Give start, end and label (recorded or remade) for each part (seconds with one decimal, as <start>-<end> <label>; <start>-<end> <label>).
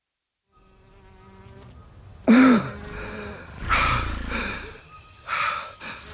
0.0-6.1 recorded